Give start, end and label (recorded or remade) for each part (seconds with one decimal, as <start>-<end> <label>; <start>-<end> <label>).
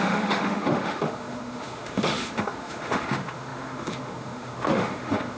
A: 0.0-5.4 remade